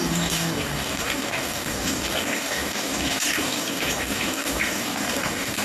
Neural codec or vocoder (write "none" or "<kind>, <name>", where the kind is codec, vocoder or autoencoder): codec, DAC